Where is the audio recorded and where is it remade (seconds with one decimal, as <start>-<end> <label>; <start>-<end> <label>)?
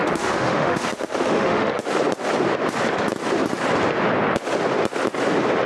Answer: 0.0-1.8 remade; 1.8-5.7 recorded